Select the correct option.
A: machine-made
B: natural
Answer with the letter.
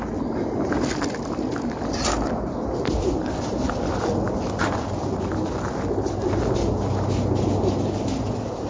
B